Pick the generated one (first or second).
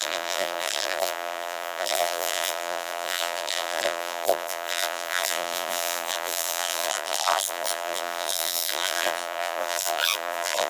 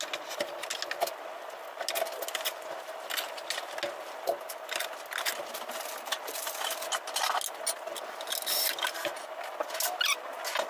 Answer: first